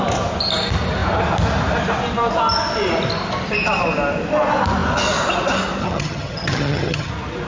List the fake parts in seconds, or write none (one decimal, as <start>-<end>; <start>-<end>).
5.8-7.1